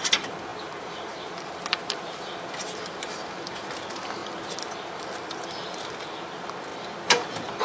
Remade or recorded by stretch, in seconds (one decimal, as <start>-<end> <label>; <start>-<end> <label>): 0.0-0.5 recorded; 0.5-1.4 remade; 1.4-1.8 recorded; 1.8-2.3 remade; 2.3-7.6 recorded